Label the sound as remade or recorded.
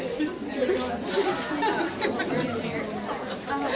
recorded